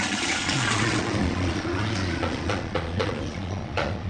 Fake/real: fake